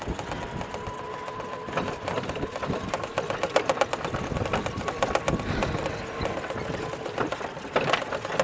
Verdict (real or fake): real